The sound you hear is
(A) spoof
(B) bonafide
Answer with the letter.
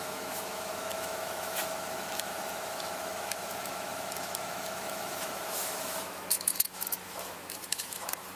A